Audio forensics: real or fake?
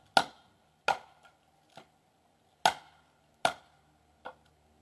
real